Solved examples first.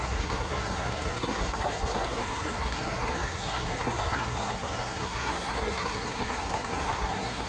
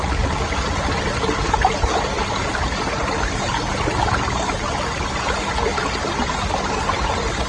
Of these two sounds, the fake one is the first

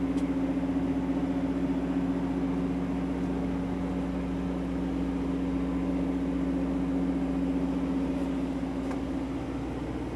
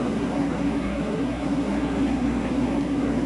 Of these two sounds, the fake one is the second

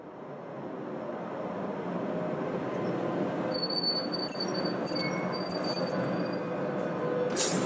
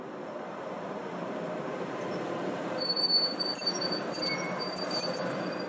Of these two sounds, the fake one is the second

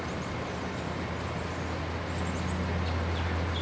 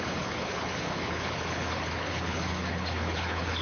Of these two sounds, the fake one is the second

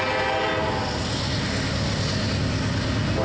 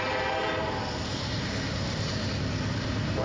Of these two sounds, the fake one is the second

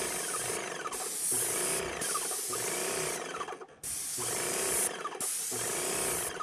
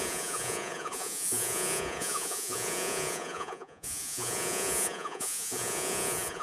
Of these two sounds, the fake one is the second